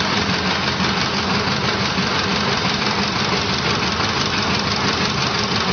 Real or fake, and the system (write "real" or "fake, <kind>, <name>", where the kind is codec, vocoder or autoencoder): real